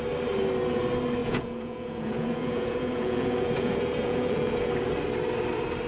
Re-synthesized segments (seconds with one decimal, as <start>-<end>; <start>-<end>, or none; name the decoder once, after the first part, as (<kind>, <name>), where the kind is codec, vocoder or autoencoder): 1.2-4.7 (vocoder, Vocos)